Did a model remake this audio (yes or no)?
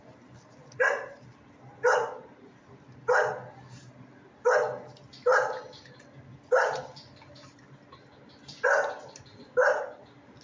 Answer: no